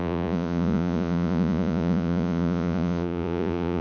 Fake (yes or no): yes